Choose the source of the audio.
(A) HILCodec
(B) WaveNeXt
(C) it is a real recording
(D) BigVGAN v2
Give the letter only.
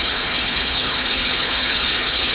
A